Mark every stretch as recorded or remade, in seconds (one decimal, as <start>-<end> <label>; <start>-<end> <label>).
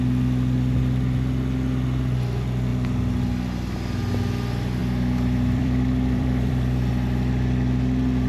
0.0-2.7 recorded; 2.7-3.7 remade; 3.7-4.8 recorded; 4.8-6.9 remade; 6.9-8.3 recorded